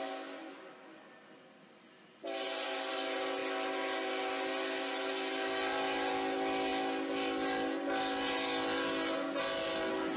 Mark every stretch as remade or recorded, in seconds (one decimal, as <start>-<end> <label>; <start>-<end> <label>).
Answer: 0.0-10.2 recorded